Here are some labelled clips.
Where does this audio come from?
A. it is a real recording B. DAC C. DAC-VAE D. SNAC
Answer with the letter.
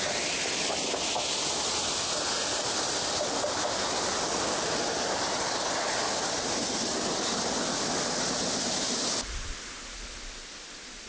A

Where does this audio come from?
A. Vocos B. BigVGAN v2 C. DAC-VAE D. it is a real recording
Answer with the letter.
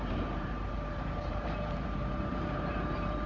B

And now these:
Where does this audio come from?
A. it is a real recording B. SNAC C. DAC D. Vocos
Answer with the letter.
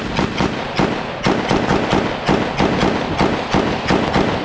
A